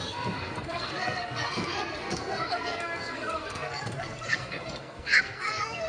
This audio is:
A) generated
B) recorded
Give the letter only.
A